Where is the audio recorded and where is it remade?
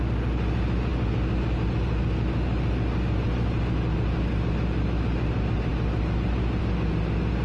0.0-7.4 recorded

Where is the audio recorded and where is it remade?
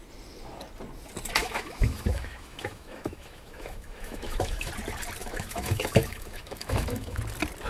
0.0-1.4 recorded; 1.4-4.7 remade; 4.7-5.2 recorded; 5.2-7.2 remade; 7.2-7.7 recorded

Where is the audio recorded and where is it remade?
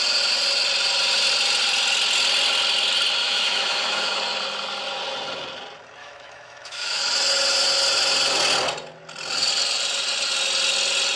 0.0-3.2 recorded; 3.2-4.2 remade; 4.2-6.0 recorded; 6.0-7.0 remade; 7.0-11.2 recorded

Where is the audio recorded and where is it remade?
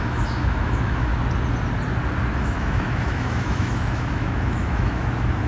0.0-1.1 remade; 1.1-2.3 recorded; 2.3-5.5 remade